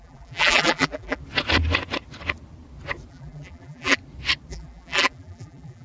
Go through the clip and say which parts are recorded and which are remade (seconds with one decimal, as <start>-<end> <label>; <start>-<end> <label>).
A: 0.0-1.2 remade; 1.2-3.1 recorded; 3.1-4.0 remade; 4.0-4.5 recorded; 4.5-5.8 remade